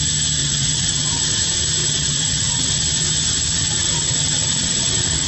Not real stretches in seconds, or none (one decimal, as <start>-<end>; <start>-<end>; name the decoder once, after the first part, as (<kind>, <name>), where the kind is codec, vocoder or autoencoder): 0.4-1.4 (vocoder, WaveNeXt); 1.8-2.8; 3.5-5.3